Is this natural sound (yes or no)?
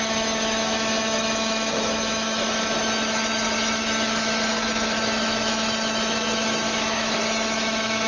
no